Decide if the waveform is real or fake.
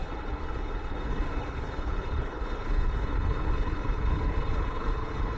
fake